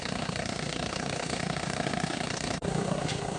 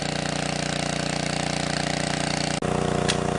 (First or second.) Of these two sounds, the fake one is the first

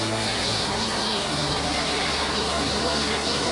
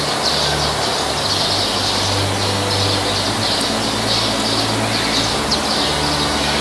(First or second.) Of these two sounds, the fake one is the first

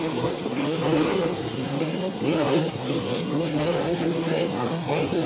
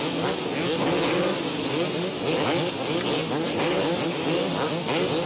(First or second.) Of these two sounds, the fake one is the first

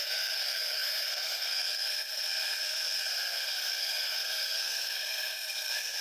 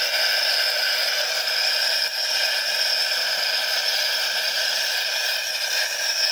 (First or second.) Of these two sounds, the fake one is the first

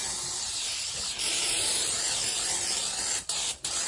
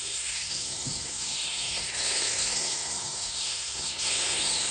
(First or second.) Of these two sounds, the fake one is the second